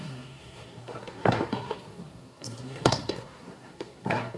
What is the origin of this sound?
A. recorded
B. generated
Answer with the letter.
B